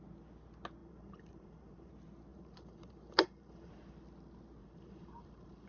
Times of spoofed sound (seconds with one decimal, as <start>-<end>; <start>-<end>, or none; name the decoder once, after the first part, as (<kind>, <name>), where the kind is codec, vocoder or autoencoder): 0.8-1.9 (vocoder, BigVGAN v2); 2.3-3.7; 4.6-5.7